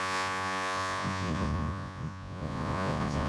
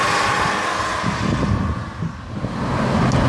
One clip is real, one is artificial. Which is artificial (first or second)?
first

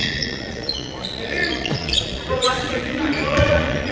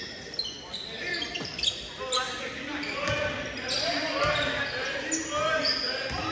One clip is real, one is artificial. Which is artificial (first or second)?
first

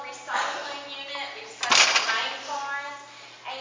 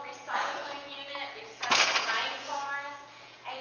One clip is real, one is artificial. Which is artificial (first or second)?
second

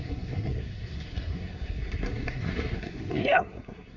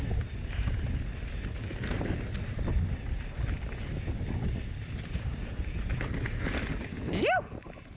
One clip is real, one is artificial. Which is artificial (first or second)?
first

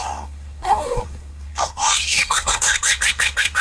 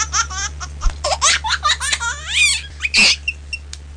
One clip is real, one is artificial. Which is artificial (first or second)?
first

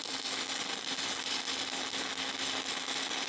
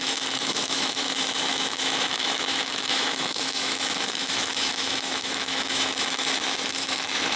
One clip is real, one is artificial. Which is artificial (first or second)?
second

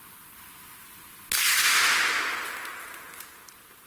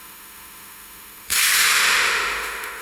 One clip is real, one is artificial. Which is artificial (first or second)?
second